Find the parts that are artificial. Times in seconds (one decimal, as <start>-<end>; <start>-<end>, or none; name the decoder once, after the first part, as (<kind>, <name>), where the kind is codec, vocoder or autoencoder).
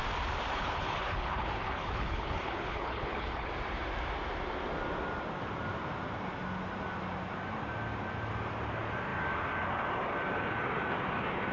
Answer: 0.5-3.5 (codec, HILCodec)